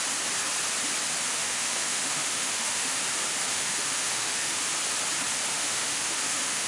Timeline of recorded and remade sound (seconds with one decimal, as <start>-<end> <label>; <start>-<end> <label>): 0.0-1.3 recorded; 1.3-3.0 remade; 3.0-3.5 recorded; 3.5-4.6 remade; 4.6-5.5 recorded; 5.5-6.7 remade

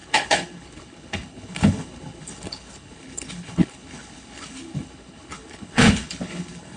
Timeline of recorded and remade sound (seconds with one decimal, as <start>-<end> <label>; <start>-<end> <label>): 0.0-6.8 remade

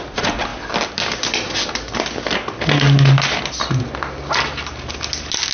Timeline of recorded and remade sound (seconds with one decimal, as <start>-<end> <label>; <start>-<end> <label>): 0.0-5.5 recorded